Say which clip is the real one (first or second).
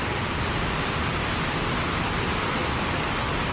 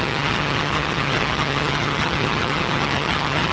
first